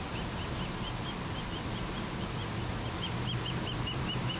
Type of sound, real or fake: real